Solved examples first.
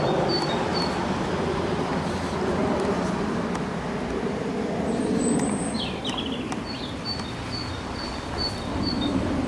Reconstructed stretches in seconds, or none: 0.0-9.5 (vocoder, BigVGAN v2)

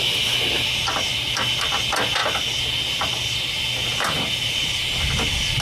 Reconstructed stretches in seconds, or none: none

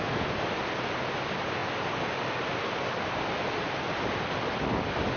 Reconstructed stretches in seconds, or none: none

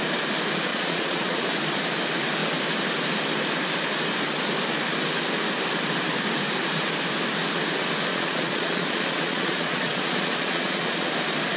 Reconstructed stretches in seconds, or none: 0.7-1.4 (vocoder, Vocos); 8.1-11.1

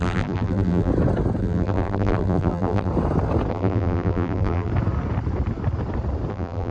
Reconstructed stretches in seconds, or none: 0.0-0.9 (vocoder, BigVGAN v2); 1.4-2.9; 3.5-4.7; 6.3-6.7

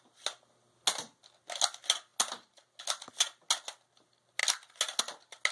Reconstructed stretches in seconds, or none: none

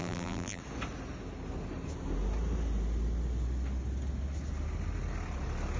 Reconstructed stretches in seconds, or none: 0.0-0.6 (vocoder, BigVGAN v2)

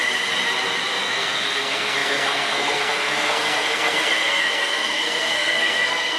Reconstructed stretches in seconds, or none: 1.0-6.2 (codec, SNAC)